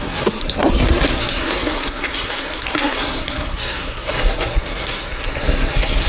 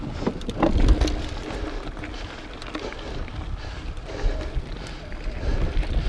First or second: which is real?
second